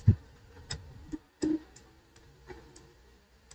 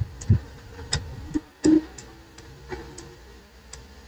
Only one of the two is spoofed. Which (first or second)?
first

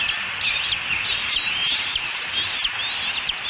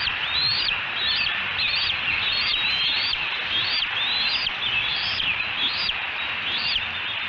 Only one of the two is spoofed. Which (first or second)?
second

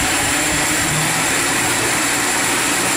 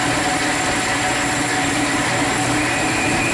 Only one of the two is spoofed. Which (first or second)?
first